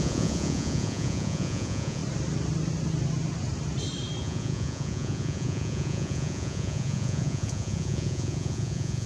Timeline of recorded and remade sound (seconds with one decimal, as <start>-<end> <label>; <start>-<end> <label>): 0.0-2.0 remade; 2.0-4.2 recorded; 4.2-9.1 remade